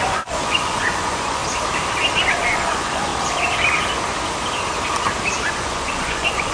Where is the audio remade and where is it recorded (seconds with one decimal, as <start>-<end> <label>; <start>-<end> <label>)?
0.0-1.4 remade; 1.4-2.4 recorded; 2.4-3.1 remade; 3.1-5.5 recorded; 5.5-6.5 remade